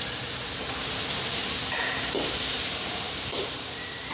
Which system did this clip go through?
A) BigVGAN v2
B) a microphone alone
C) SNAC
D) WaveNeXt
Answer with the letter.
A